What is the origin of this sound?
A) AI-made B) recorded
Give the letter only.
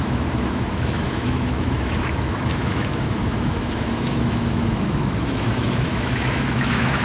A